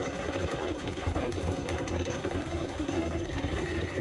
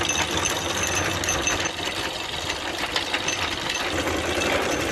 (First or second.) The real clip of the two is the second